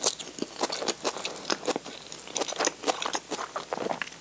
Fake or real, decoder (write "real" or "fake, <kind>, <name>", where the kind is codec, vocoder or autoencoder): real